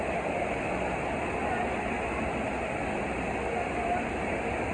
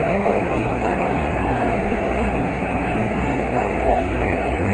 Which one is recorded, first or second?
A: first